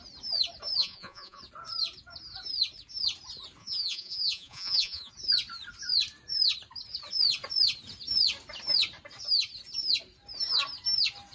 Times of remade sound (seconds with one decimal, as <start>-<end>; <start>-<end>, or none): 0.8-1.4; 3.6-5.1